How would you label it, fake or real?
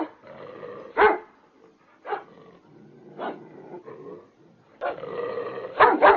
real